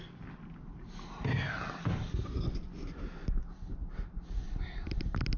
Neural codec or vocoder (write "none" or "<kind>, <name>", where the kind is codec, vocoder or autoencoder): none